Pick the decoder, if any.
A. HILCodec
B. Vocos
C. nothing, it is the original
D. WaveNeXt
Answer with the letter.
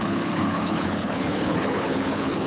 A